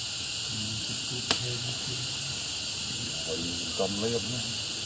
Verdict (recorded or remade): recorded